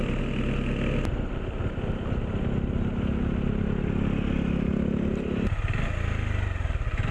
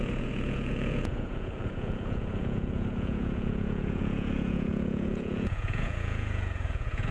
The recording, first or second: first